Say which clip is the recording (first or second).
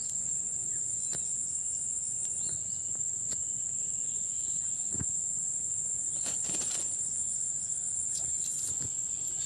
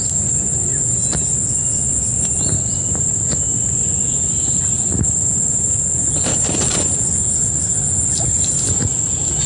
second